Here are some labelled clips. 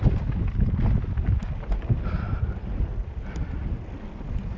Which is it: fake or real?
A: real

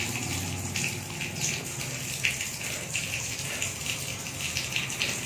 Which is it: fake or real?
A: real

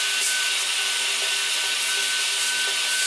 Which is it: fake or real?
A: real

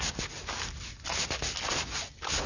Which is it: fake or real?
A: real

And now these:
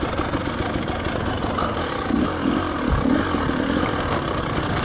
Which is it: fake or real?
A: real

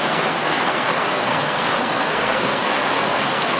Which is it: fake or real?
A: fake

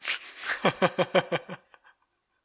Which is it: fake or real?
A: real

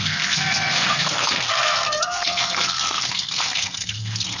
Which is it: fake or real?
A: fake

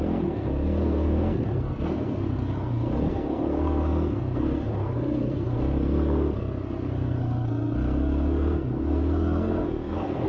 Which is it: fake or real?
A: fake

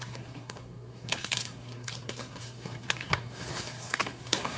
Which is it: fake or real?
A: fake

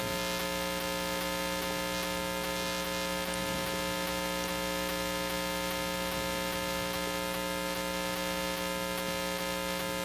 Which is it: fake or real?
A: real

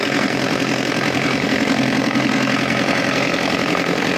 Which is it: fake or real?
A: fake